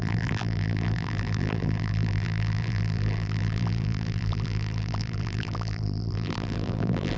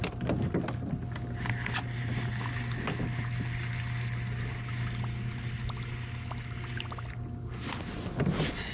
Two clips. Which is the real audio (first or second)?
second